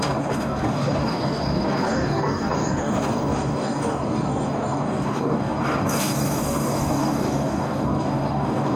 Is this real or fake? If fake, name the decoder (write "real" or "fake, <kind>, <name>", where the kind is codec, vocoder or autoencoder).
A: fake, codec, DAC